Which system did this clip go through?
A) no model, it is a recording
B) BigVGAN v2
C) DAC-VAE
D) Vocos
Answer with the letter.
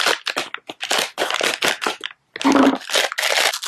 A